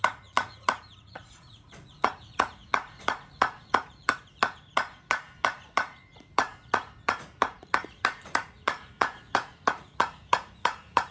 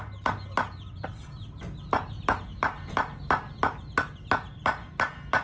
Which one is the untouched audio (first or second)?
second